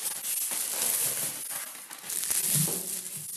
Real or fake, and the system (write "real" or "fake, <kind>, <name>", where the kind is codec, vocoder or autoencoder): real